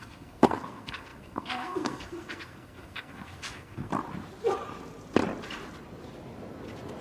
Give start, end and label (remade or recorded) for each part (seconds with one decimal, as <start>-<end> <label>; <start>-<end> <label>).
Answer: 0.0-3.9 remade; 3.9-7.0 recorded